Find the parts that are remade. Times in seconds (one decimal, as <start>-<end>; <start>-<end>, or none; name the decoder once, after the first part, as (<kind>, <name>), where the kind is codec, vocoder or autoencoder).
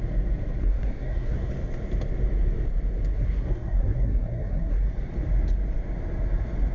0.6-1.5 (codec, SNAC); 3.1-4.8